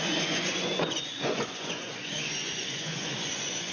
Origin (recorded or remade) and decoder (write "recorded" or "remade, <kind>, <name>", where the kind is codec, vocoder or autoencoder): remade, vocoder, Vocos